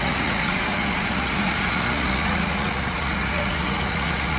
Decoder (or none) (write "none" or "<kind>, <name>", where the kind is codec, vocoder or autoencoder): vocoder, Vocos